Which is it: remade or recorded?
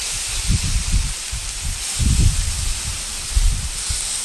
recorded